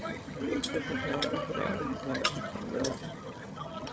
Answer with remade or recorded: remade